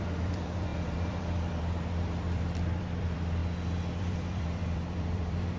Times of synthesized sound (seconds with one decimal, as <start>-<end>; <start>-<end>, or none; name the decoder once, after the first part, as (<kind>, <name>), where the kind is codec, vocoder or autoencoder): 0.0-3.4 (vocoder, BigVGAN v2); 4.0-5.6